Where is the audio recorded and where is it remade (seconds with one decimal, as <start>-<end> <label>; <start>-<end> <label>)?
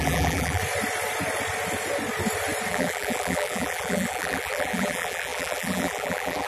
0.0-0.6 remade; 0.6-2.7 recorded; 2.7-6.5 remade